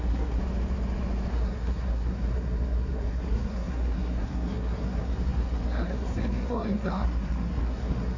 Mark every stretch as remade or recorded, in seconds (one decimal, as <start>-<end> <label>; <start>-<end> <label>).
0.0-0.4 remade; 0.4-1.3 recorded; 1.3-8.2 remade